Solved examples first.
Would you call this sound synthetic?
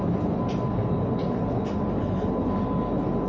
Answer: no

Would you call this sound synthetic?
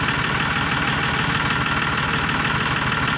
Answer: no